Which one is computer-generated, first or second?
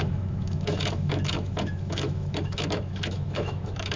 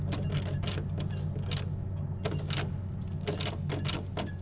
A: first